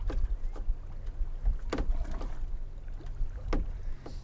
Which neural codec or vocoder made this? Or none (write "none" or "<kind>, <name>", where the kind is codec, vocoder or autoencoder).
none